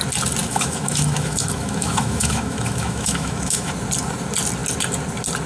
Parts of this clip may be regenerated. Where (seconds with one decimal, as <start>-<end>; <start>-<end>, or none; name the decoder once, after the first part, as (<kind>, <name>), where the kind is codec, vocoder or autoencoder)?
0.4-3.7 (autoencoder, DAC-VAE)